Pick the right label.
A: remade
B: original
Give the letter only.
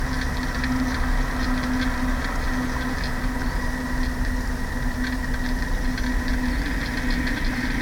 B